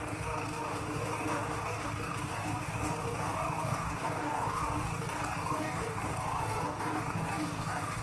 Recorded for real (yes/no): no